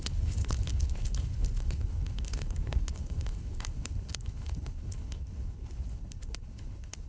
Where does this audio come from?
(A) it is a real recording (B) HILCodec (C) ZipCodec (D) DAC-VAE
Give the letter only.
B